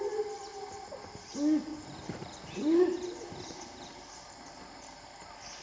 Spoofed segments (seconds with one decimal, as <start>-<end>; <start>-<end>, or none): 0.5-1.0; 1.7-4.8

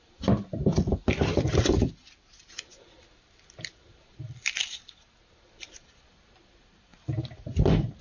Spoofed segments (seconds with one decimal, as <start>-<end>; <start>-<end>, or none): 1.3-1.9

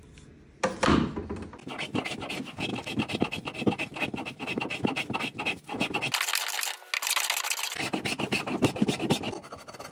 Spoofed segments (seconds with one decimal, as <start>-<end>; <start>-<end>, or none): 2.7-4.0

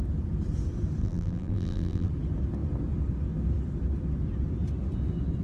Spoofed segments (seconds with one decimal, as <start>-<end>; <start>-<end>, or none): 1.0-2.1

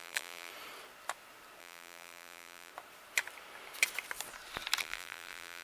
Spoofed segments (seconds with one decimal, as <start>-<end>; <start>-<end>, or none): 0.0-0.5; 1.6-2.7; 4.8-5.6

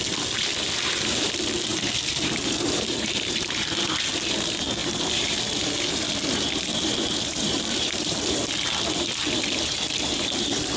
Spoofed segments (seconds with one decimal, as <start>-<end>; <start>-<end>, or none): 1.7-3.9; 4.8-5.4; 6.7-8.1